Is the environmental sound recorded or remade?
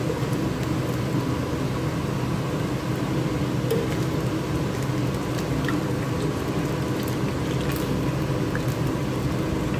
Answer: recorded